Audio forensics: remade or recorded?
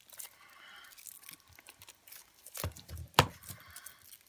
recorded